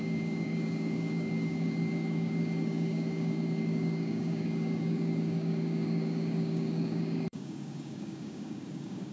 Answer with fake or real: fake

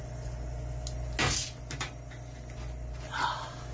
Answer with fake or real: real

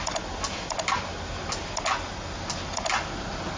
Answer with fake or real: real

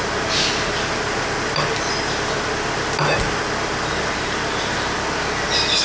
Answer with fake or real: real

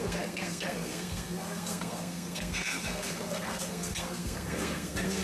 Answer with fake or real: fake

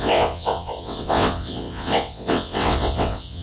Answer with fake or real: fake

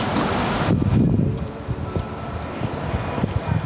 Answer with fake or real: real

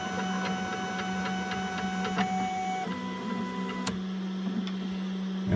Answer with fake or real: real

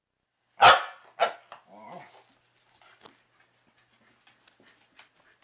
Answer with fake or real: real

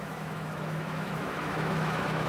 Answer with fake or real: fake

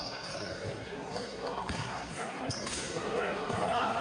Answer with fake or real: fake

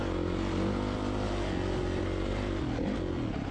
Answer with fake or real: real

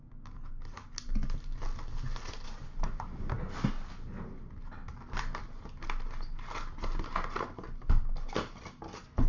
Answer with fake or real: real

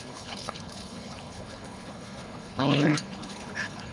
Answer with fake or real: fake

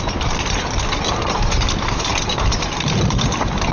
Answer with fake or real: fake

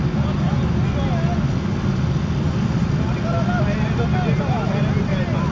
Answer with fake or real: real